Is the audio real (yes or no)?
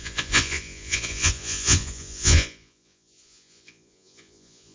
no